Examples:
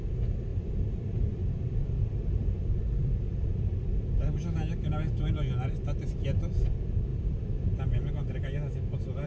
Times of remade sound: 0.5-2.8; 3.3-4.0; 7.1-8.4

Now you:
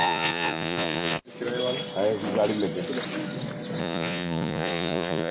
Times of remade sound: 0.0-1.2; 3.8-5.3

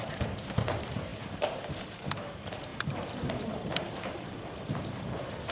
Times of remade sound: 0.0-5.5

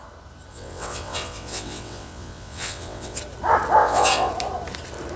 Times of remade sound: 0.5-3.2; 3.8-4.3

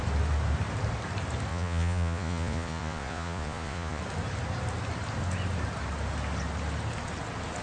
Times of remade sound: 1.5-4.0

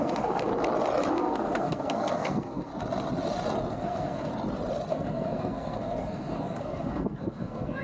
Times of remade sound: 0.0-0.5; 1.1-2.7; 3.7-4.3; 4.9-7.8

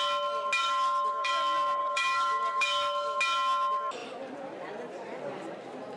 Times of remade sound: 0.6-1.3; 1.8-3.2

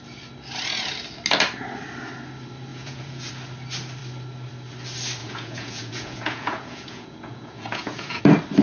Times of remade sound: 2.7-3.3; 5.2-8.2